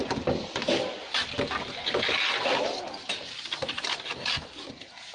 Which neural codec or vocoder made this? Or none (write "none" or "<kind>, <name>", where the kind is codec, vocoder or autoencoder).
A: none